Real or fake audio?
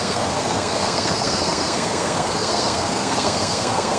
fake